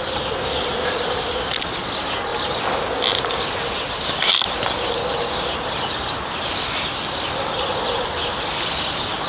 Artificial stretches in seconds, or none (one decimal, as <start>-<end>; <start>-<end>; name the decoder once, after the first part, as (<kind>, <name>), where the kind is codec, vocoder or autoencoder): none

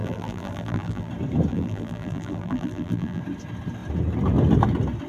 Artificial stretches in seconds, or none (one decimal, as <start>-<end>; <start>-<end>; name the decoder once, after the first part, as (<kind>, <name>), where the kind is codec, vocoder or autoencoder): 0.0-1.1 (vocoder, BigVGAN v2); 1.5-3.2

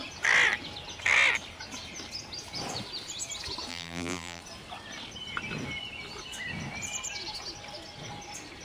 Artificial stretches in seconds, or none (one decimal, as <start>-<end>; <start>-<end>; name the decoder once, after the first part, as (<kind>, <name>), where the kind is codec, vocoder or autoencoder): 3.7-4.4 (vocoder, BigVGAN v2)

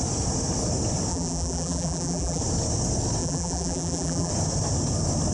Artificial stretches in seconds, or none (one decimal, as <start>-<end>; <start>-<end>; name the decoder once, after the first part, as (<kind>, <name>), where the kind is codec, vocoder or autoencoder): 1.1-2.4 (vocoder, BigVGAN v2); 3.2-4.3

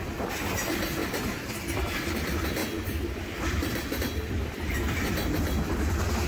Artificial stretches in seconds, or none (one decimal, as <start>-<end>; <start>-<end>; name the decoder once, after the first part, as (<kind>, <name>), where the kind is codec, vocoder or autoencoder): 1.0-1.5 (vocoder, BigVGAN v2); 2.6-4.0